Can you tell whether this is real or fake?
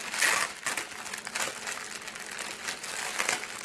real